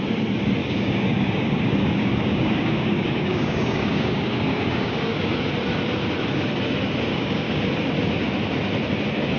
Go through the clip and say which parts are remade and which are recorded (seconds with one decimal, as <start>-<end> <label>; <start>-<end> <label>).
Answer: 0.0-0.6 recorded; 0.6-5.4 remade; 5.4-7.1 recorded; 7.1-7.6 remade; 7.6-9.4 recorded